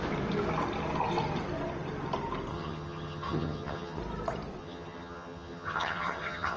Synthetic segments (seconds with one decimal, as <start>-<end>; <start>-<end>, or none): 2.5-4.0; 4.6-6.6